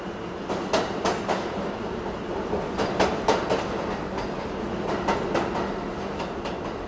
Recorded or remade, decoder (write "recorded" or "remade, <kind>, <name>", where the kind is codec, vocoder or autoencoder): recorded